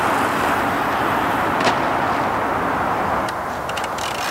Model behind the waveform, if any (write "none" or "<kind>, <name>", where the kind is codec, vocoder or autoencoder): none